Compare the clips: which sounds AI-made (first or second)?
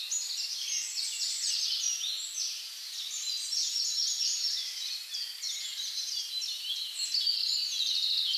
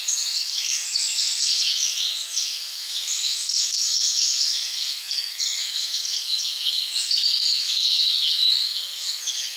second